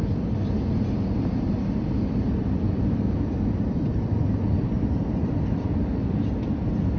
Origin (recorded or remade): recorded